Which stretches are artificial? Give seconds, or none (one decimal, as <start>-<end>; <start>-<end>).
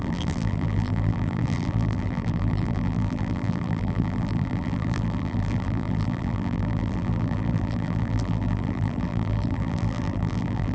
0.0-10.7